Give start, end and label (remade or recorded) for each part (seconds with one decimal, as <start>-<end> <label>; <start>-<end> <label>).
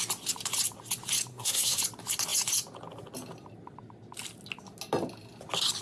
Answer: 0.0-1.3 recorded; 1.3-1.8 remade; 1.8-5.8 recorded